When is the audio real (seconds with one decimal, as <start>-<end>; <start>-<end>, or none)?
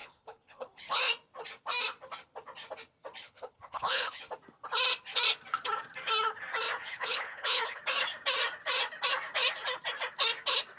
1.0-3.2; 4.2-6.9; 7.8-10.8